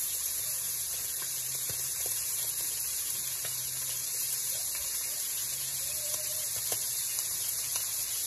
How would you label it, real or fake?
fake